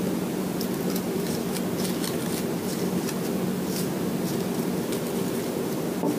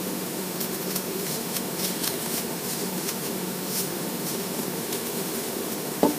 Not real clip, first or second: second